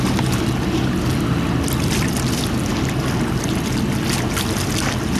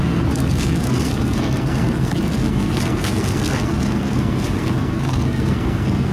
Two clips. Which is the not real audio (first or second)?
second